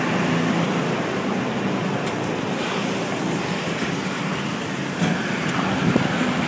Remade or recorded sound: recorded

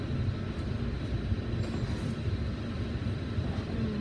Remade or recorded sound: recorded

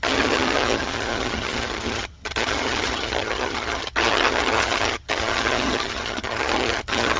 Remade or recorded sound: remade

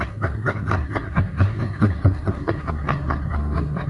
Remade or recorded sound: remade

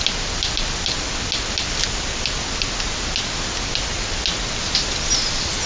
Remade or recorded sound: recorded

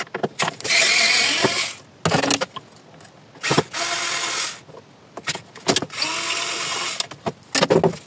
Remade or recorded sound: recorded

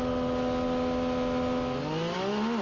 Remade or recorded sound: recorded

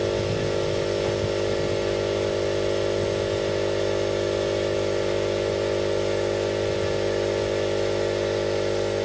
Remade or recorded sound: recorded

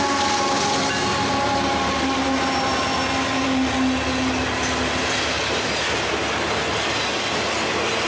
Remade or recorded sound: recorded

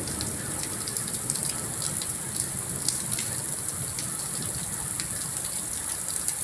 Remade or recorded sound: recorded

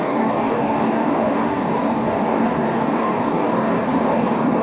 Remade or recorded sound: remade